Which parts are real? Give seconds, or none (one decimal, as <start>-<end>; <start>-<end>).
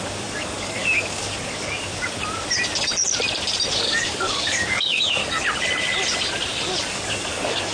2.2-3.8; 5.2-6.8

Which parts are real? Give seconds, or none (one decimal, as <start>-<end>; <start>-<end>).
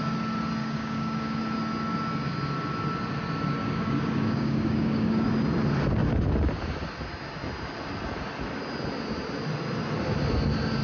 0.0-0.6; 1.4-3.6; 5.3-10.8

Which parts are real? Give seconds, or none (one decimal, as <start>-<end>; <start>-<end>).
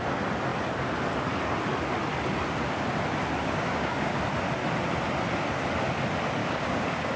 0.0-3.4; 4.2-6.4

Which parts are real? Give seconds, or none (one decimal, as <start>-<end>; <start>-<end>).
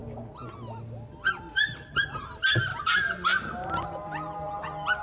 0.0-5.0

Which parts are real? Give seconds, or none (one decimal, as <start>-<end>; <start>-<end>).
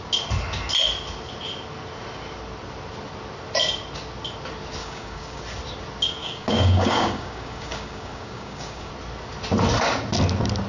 0.0-4.8; 5.4-6.2; 8.9-10.7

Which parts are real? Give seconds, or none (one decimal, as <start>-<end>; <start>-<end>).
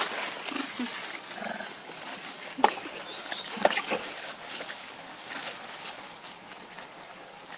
0.0-1.8; 2.7-3.2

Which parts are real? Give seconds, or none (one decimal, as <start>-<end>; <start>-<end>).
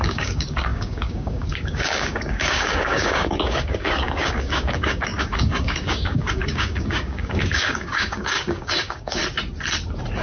9.2-10.2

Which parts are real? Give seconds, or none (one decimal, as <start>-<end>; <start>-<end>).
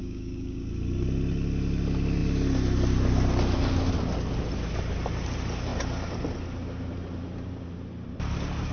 0.6-8.7